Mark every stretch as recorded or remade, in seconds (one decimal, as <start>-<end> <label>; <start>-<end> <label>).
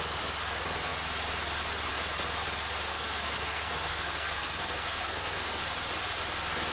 0.0-2.9 recorded; 2.9-5.6 remade; 5.6-6.7 recorded